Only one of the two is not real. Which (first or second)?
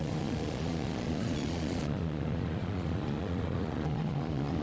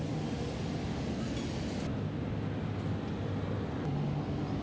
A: first